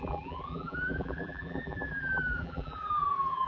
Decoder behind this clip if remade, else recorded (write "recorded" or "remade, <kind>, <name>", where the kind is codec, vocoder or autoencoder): remade, vocoder, BigVGAN v2